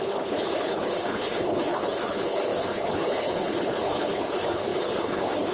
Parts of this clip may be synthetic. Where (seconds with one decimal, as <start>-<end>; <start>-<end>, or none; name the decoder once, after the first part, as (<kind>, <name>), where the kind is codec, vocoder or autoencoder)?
0.0-5.5 (codec, HILCodec)